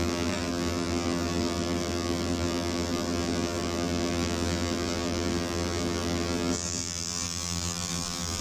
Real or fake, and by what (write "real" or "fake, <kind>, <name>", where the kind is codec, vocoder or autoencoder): fake, vocoder, BigVGAN v2